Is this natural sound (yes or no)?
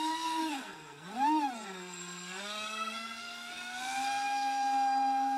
no